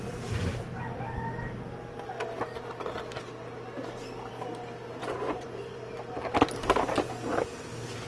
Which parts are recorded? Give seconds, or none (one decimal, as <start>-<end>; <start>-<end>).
0.0-5.0; 5.8-8.1